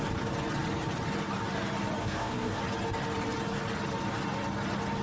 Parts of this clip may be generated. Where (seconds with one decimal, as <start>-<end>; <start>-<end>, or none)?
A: 2.0-2.6